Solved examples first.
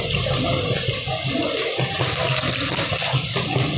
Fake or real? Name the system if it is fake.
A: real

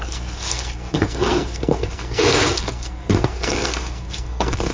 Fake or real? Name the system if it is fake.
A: fake, codec, SNAC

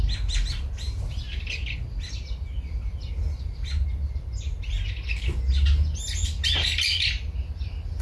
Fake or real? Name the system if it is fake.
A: real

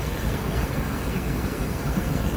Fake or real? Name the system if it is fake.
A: fake, codec, SNAC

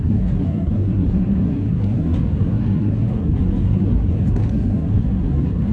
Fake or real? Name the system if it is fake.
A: fake, codec, SNAC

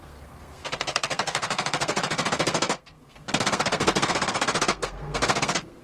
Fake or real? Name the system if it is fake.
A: fake, codec, SNAC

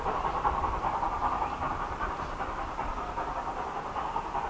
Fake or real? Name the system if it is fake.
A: real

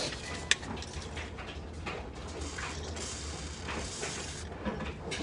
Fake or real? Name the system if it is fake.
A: real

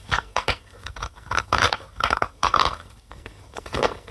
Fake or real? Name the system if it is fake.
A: fake, codec, SNAC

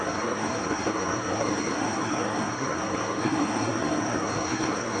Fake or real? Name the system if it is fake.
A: fake, codec, SNAC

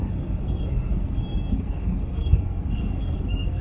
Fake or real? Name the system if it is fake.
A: fake, codec, SNAC